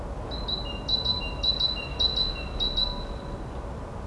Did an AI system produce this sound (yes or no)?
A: no